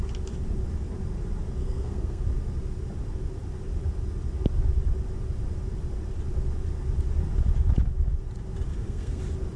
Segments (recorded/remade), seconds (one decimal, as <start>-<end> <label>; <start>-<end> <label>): 0.0-1.6 recorded; 1.6-2.2 remade; 2.2-8.7 recorded; 8.7-9.2 remade; 9.2-9.6 recorded